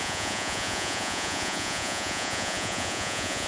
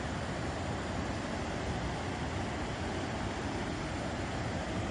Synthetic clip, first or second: first